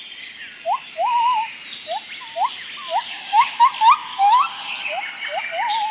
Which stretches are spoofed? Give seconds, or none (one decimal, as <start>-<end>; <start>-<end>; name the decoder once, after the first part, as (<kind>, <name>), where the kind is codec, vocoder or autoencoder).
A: 3.0-3.6 (codec, DAC); 4.0-4.7